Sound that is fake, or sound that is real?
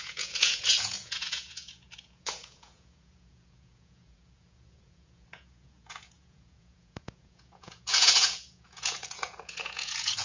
fake